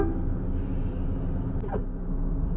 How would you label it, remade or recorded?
recorded